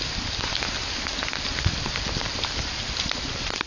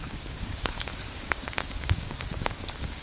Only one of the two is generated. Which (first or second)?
second